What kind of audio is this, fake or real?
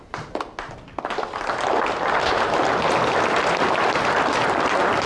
real